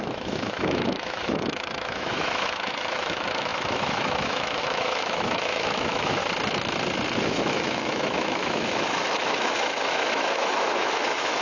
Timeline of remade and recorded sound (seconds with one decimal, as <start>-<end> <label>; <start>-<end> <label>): 0.0-6.2 remade; 6.2-7.2 recorded; 7.2-11.4 remade